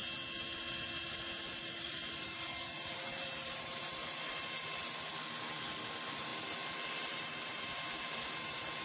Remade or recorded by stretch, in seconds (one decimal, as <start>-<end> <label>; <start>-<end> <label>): 0.0-1.7 recorded; 1.7-8.8 remade